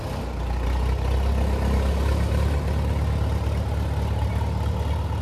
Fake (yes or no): no